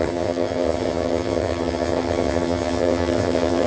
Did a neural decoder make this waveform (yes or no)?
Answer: yes